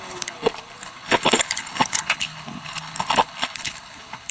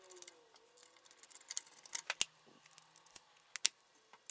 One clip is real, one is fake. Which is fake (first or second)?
first